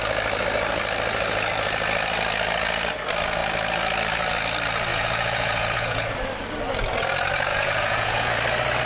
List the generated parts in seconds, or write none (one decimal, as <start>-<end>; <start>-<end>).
4.9-6.1; 7.5-8.3